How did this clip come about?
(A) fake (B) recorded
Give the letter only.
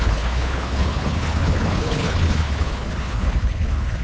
A